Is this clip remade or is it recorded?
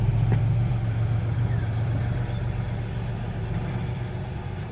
recorded